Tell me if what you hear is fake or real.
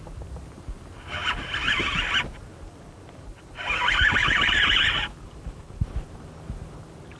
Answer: real